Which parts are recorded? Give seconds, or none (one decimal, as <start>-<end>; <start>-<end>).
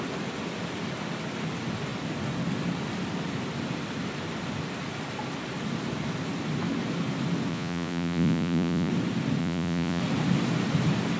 0.0-7.5; 8.9-9.4; 10.0-11.2